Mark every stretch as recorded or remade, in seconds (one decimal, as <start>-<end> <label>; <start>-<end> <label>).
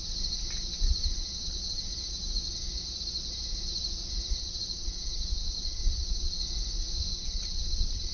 0.0-1.2 recorded; 1.2-1.8 remade; 1.8-4.4 recorded; 4.4-6.4 remade; 6.4-7.1 recorded; 7.1-8.1 remade